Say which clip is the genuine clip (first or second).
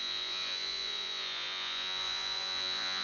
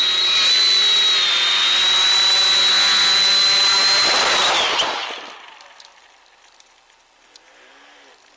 second